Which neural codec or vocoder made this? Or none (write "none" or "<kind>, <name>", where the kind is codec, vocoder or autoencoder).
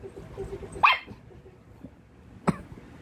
none